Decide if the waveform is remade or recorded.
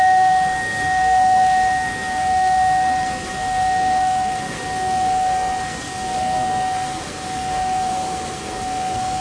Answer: remade